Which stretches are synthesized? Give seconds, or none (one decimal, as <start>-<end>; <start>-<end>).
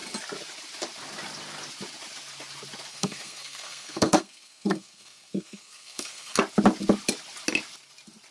2.9-6.4